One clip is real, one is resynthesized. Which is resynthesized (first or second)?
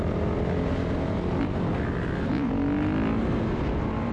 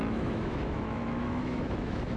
second